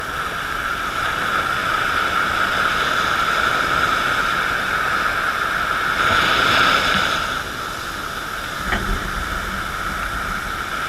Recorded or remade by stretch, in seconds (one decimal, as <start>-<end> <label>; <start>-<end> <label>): 0.0-1.6 recorded; 1.6-2.3 remade; 2.3-10.9 recorded